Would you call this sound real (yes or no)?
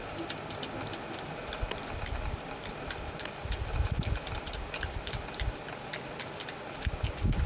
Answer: yes